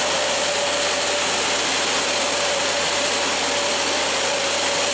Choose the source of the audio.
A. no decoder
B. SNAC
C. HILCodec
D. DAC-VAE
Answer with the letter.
A